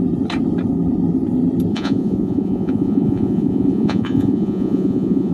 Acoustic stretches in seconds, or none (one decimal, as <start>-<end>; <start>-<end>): 0.0-1.7